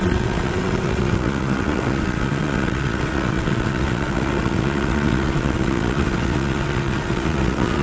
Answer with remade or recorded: remade